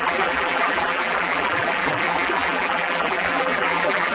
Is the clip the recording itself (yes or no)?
no